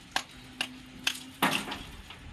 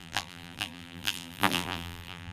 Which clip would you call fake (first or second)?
second